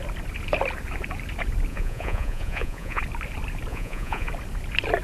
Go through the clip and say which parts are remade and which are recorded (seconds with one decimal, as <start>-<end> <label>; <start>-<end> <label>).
0.0-1.7 recorded; 1.7-3.0 remade; 3.0-3.7 recorded; 3.7-4.3 remade; 4.3-5.0 recorded